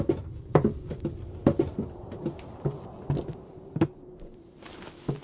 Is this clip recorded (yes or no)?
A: yes